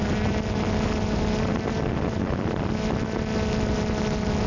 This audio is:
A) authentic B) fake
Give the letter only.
A